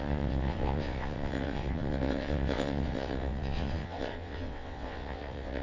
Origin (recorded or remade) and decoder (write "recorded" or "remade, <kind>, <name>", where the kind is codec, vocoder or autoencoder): remade, vocoder, WaveNeXt